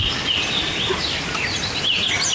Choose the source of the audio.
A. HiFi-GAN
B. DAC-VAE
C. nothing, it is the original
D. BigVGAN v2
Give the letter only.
C